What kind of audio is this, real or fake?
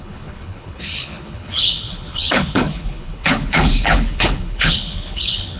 fake